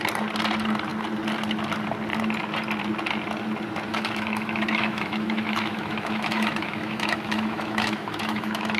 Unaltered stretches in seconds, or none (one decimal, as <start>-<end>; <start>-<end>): 0.0-3.9